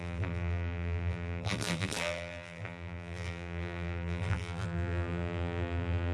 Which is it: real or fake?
fake